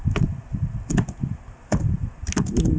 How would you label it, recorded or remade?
recorded